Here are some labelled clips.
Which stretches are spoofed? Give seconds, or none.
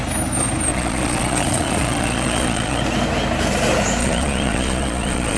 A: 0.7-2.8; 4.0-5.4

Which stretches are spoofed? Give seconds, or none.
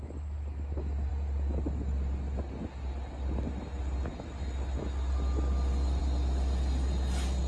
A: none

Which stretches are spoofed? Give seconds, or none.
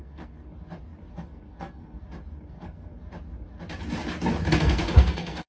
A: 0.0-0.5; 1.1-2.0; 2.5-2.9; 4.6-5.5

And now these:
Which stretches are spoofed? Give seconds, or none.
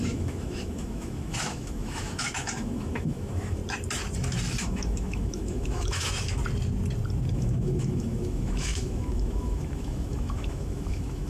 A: 0.0-3.6; 4.6-6.4; 7.3-11.3